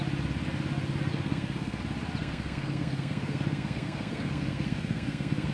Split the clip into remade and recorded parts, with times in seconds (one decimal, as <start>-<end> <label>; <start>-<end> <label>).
0.0-1.1 recorded; 1.1-1.8 remade; 1.8-2.2 recorded; 2.2-5.5 remade